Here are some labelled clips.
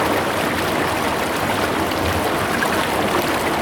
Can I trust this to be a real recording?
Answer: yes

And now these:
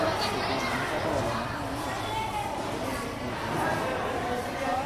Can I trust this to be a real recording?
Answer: yes